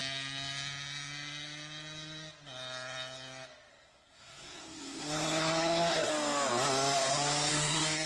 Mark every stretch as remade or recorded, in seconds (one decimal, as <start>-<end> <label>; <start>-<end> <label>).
0.0-3.7 recorded; 3.7-6.1 remade; 6.1-7.5 recorded; 7.5-8.1 remade